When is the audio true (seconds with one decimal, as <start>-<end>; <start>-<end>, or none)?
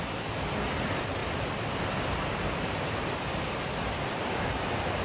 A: 0.0-5.0